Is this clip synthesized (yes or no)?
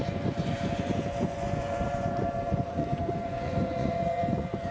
yes